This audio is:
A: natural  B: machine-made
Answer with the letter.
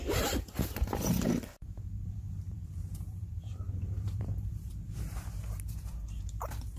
B